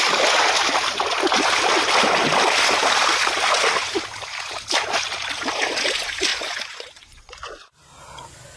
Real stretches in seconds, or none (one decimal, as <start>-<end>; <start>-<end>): 0.0-6.3; 7.5-8.6